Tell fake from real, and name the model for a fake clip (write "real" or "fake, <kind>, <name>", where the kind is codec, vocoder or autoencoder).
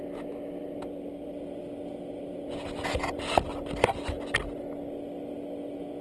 real